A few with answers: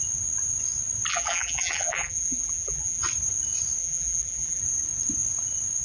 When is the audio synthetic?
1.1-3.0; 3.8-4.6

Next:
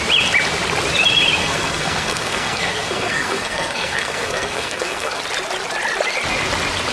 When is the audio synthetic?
1.4-5.2